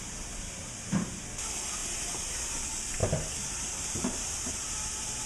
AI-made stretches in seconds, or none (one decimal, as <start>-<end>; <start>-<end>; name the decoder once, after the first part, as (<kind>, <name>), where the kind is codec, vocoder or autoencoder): 0.6-1.2 (vocoder, BigVGAN v2); 1.8-2.5; 3.0-5.3